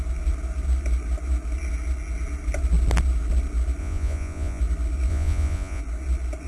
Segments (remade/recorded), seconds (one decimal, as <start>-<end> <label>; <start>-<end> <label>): 0.0-3.8 recorded; 3.8-4.6 remade; 4.6-5.1 recorded; 5.1-5.8 remade; 5.8-6.5 recorded